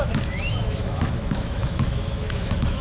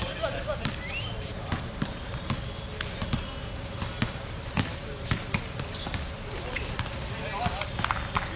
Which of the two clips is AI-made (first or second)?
first